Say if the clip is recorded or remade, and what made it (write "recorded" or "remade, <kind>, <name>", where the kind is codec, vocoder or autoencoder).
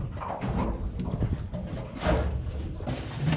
recorded